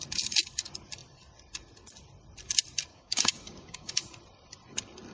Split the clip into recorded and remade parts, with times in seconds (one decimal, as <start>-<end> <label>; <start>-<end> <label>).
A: 0.0-2.9 recorded; 2.9-4.0 remade; 4.0-5.1 recorded